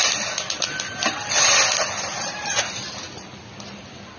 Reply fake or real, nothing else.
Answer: real